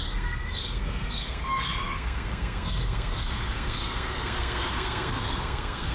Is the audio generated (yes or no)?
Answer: yes